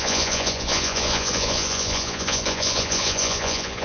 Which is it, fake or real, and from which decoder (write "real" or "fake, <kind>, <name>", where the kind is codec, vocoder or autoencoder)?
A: fake, vocoder, Vocos